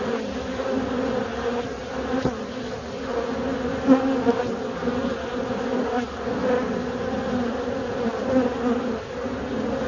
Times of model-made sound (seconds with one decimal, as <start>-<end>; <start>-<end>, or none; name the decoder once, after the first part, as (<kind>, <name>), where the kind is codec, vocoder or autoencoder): none

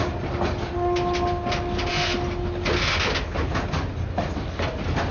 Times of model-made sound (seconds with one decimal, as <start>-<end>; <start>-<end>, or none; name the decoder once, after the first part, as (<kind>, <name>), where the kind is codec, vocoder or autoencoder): none